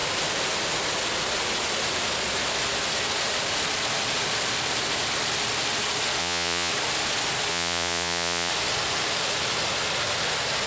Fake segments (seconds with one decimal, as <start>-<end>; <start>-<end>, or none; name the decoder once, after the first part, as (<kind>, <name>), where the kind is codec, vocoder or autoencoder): 6.2-6.7 (vocoder, Vocos); 7.5-8.5